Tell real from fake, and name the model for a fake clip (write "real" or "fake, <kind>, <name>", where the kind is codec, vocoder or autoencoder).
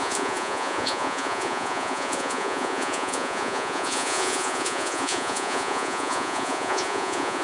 fake, vocoder, Vocos